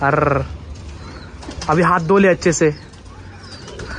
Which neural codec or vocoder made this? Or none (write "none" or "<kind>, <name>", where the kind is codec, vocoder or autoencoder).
none